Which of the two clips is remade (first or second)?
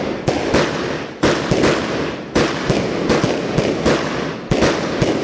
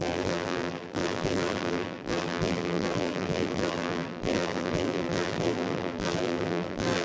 second